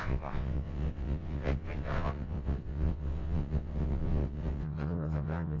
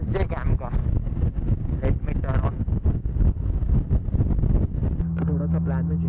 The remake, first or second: first